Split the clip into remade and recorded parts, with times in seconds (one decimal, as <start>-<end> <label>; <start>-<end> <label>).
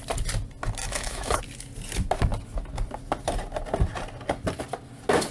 0.0-0.8 recorded; 0.8-1.4 remade; 1.4-5.3 recorded